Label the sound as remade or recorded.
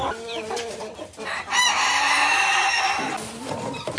remade